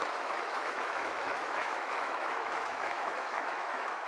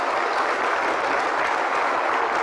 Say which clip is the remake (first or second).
first